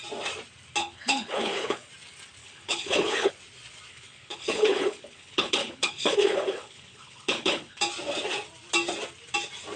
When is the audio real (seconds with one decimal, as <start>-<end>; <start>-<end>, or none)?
0.0-0.8; 1.9-2.4; 3.3-3.9; 7.8-9.8